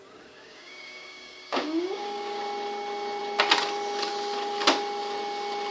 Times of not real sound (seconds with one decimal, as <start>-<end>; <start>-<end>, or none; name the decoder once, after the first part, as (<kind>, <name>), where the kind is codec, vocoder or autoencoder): 0.0-2.4 (codec, DAC)